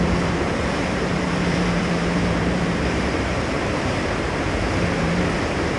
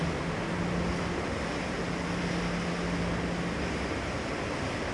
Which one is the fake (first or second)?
first